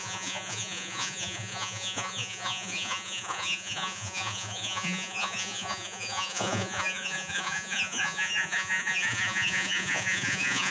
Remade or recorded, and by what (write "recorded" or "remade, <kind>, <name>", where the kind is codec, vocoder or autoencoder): remade, vocoder, Vocos